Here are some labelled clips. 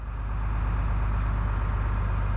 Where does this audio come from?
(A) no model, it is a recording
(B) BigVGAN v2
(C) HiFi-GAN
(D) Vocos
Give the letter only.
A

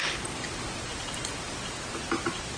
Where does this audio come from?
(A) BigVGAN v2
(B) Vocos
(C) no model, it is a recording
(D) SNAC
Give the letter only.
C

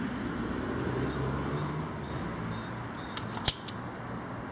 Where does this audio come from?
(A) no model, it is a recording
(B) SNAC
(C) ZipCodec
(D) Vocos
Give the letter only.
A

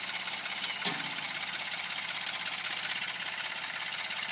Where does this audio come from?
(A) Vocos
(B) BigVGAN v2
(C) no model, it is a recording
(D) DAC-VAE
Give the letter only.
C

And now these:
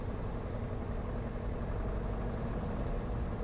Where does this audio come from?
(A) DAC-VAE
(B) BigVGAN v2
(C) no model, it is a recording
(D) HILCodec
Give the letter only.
C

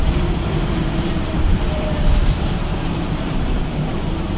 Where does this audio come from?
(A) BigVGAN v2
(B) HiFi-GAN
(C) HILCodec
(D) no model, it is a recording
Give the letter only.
A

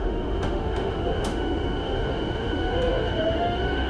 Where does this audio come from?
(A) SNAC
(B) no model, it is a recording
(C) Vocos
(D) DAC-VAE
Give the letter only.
D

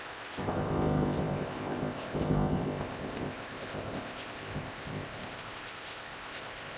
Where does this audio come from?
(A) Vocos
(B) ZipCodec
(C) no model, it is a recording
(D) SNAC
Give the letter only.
B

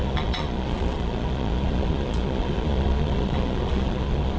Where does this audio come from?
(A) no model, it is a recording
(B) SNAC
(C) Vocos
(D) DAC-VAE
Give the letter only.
C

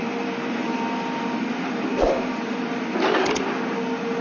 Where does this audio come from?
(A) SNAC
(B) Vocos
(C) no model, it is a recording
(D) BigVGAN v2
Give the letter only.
C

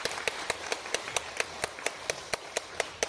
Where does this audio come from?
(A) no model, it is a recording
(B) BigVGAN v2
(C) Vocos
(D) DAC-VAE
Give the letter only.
B